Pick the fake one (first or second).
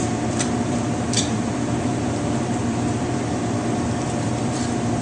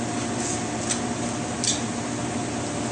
first